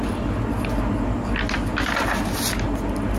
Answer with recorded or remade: recorded